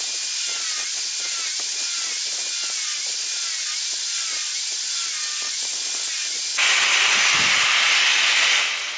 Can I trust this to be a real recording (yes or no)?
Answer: yes